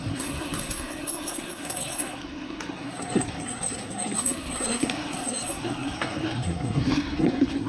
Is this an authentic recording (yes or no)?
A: no